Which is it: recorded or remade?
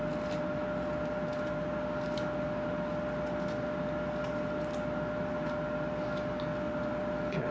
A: recorded